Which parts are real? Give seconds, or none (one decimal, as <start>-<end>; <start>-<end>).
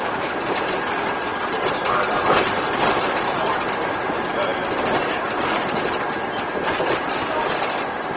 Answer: 1.3-3.5